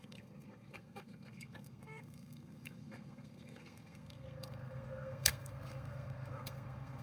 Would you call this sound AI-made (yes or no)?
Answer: yes